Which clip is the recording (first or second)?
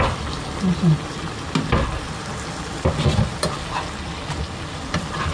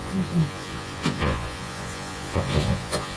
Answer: first